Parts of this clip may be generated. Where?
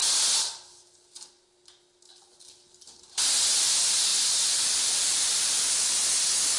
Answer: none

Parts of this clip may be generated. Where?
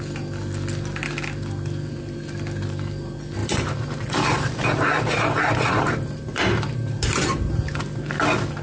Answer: 3.4-7.5 (vocoder, BigVGAN v2)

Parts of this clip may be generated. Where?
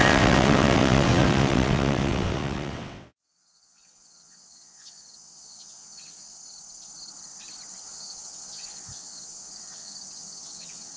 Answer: 0.0-6.4 (vocoder, WaveNeXt); 7.7-11.0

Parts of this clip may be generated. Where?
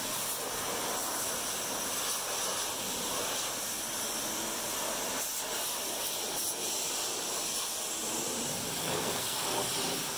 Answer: 8.8-9.6 (codec, SNAC)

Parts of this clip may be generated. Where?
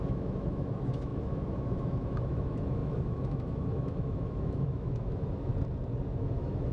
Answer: 0.0-5.5 (autoencoder, DAC-VAE); 6.2-6.7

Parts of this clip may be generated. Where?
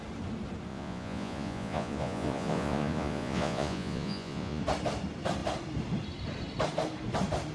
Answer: 0.7-4.6 (vocoder, Vocos)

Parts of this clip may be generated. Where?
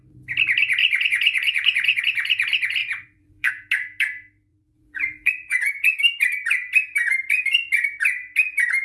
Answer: 0.8-2.0 (vocoder, Vocos); 2.8-3.5; 4.5-6.0